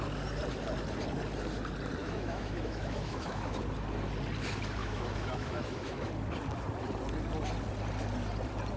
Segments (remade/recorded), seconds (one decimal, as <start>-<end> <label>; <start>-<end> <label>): 0.0-2.0 recorded; 2.0-3.6 remade; 3.6-4.8 recorded; 4.8-6.1 remade; 6.1-8.8 recorded